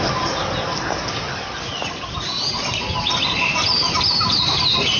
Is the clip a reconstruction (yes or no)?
no